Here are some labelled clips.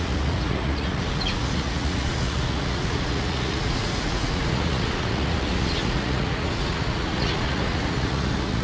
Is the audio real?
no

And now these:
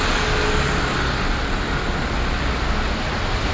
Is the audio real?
yes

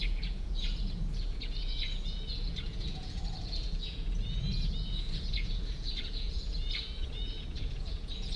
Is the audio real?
no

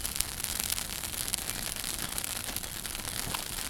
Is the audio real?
yes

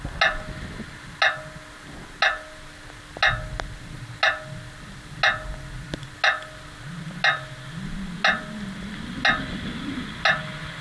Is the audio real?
yes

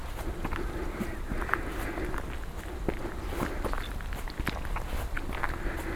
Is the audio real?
yes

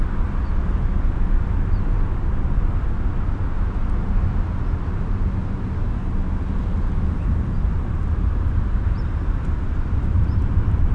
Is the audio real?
yes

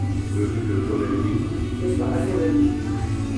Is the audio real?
yes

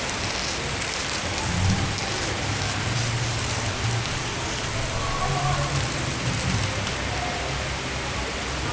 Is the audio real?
yes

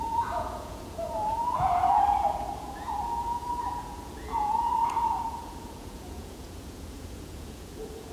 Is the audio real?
no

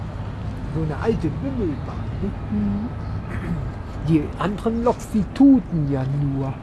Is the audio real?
yes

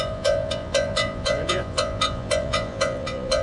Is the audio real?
no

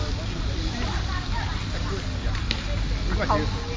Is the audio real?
yes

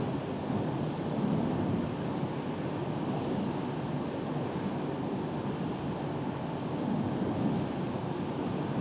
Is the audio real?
yes